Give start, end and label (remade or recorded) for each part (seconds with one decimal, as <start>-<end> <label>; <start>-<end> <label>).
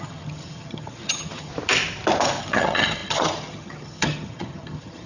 0.0-1.5 remade; 1.5-2.4 recorded; 2.4-5.1 remade